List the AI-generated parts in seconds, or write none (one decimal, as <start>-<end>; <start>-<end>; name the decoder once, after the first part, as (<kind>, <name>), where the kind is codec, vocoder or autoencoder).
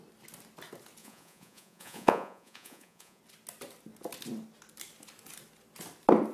1.0-3.2 (vocoder, Vocos)